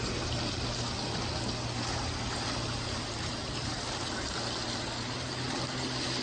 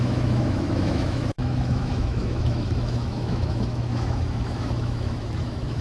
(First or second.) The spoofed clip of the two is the second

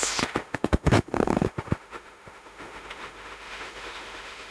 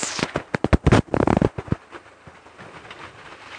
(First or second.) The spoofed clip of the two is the first